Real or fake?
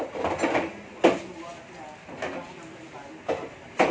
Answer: real